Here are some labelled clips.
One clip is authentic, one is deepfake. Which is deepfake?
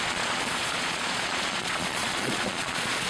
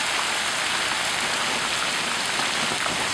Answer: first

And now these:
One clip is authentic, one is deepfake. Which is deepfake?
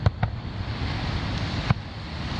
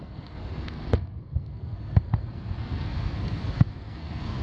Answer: second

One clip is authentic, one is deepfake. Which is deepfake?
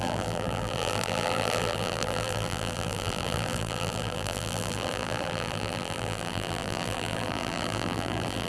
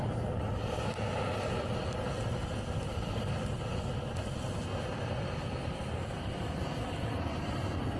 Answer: first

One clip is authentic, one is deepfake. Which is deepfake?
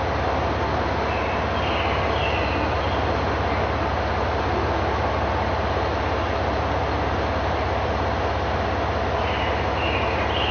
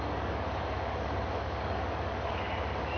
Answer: second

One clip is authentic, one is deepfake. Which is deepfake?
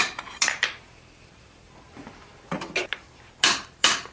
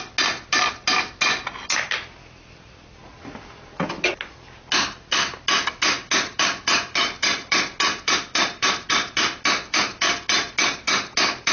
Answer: first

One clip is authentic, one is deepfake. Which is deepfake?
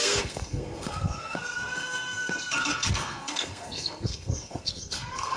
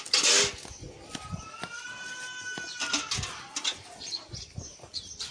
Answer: first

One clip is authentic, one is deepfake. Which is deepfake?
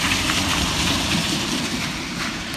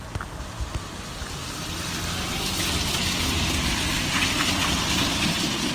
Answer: first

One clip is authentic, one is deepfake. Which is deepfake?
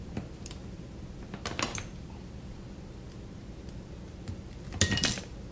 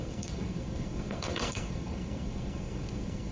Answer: second